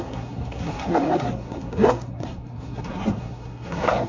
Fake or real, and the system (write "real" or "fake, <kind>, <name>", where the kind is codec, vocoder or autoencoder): fake, codec, SNAC